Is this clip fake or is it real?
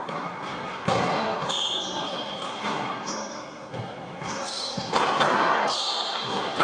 fake